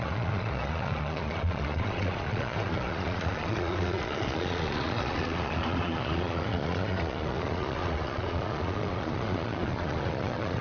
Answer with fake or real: fake